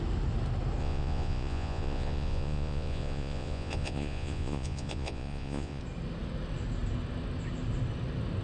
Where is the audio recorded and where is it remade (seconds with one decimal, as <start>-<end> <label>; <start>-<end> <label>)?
0.0-0.8 recorded; 0.8-5.8 remade; 5.8-8.4 recorded